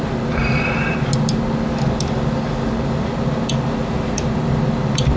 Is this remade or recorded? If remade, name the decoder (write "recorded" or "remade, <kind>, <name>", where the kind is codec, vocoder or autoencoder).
recorded